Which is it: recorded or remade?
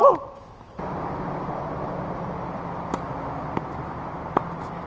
recorded